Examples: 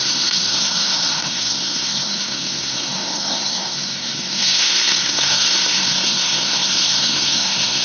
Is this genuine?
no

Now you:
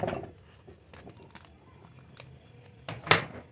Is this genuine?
yes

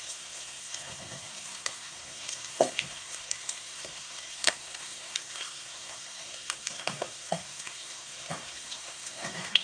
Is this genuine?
no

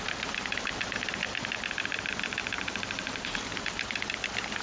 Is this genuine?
yes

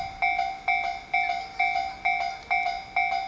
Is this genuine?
yes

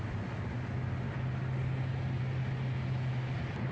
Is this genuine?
yes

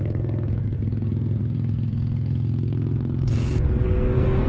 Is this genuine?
no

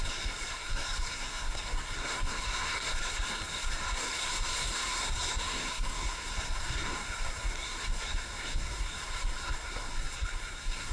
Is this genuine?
no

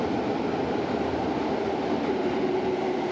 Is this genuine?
yes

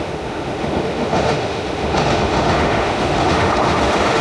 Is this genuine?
no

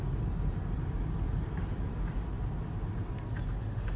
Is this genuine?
yes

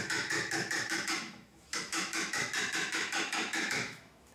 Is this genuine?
no